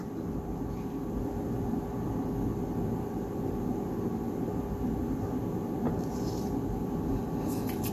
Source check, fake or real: real